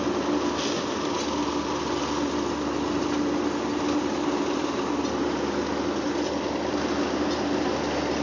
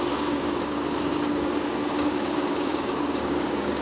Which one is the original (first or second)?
first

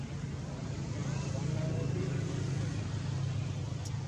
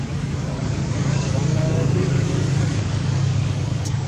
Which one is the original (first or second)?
first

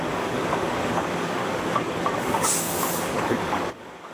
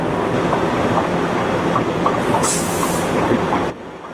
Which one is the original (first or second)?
second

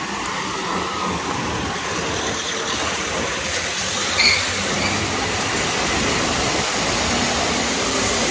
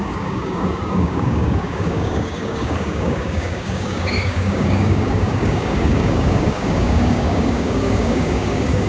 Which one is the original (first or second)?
first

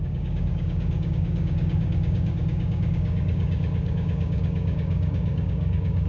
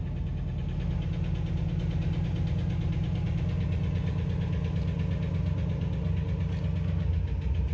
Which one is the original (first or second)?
second